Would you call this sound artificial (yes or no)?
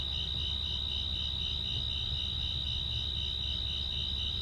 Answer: no